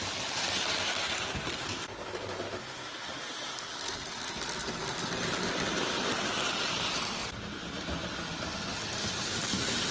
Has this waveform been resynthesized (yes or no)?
no